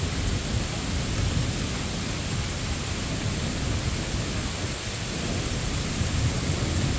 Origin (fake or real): real